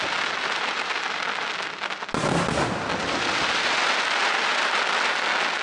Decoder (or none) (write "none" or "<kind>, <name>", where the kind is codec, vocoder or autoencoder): none